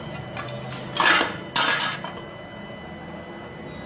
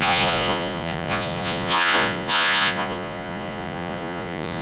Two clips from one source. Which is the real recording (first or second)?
first